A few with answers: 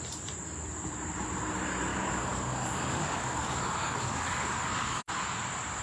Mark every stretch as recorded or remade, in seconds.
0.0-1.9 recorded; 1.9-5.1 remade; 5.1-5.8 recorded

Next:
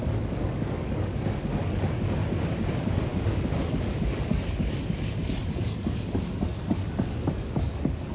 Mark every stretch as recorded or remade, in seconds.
0.0-2.2 remade; 2.2-2.7 recorded; 2.7-8.1 remade

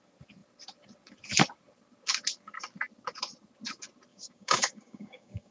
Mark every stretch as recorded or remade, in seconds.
0.0-4.1 recorded; 4.1-5.5 remade

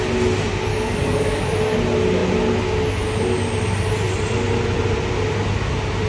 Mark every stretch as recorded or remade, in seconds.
0.0-0.7 recorded; 0.7-1.4 remade; 1.4-6.1 recorded

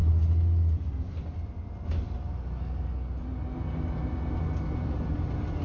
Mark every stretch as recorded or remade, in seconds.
0.0-5.6 recorded